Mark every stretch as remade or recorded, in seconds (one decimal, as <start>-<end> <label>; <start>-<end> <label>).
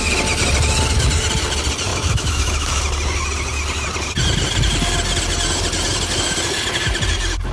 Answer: 0.0-1.9 recorded; 1.9-2.8 remade; 2.8-7.5 recorded